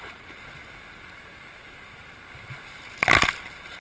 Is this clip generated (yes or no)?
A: no